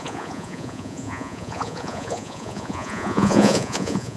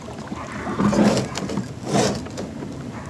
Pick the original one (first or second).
second